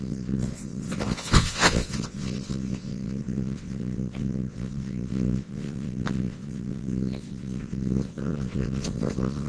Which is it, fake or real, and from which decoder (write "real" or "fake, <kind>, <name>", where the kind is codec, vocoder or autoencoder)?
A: fake, vocoder, WaveNeXt